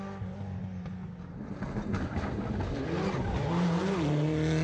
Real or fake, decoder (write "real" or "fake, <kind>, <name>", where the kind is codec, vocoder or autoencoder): real